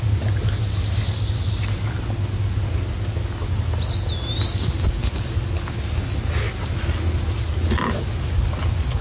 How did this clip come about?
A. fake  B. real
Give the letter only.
B